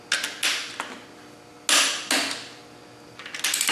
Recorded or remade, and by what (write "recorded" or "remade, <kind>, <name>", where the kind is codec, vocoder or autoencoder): recorded